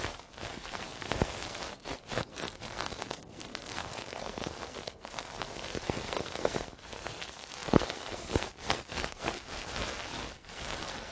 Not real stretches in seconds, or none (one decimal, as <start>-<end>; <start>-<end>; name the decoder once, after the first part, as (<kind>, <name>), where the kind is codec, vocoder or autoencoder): 0.0-11.1 (codec, SNAC)